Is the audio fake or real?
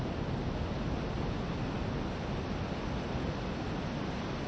real